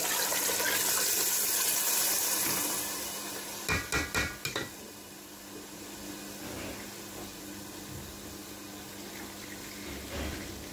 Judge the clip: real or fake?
real